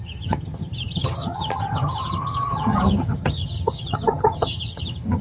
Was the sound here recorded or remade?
remade